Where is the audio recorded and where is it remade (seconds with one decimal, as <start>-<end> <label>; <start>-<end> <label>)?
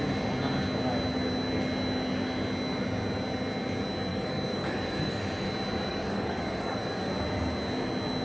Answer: 0.0-4.1 recorded; 4.1-5.2 remade; 5.2-5.9 recorded; 5.9-7.1 remade; 7.1-8.2 recorded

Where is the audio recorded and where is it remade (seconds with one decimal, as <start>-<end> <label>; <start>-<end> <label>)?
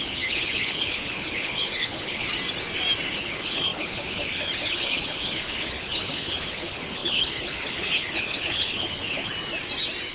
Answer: 0.0-2.3 remade; 2.3-3.2 recorded; 3.2-9.3 remade; 9.3-10.1 recorded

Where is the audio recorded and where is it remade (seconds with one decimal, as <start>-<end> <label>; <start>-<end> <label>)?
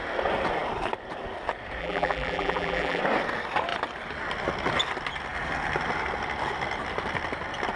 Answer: 0.0-1.8 recorded; 1.8-3.0 remade; 3.0-7.8 recorded